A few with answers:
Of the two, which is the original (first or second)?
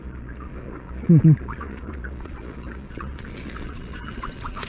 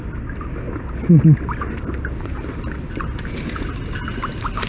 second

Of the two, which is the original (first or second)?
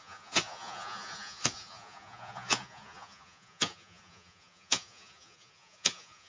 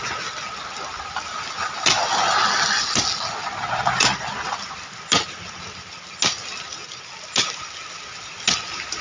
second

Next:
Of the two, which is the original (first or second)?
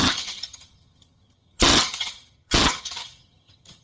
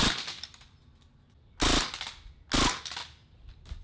second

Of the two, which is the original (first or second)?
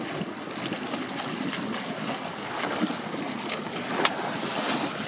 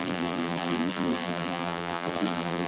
first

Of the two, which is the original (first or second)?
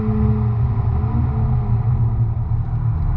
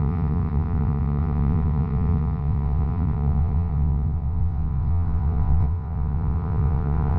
first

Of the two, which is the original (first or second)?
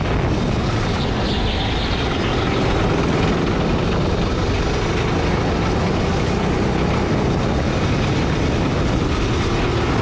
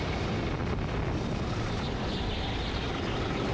first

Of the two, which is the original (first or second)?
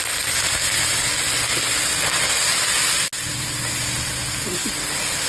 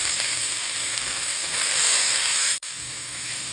first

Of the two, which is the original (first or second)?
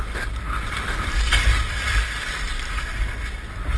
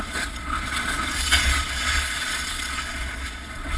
first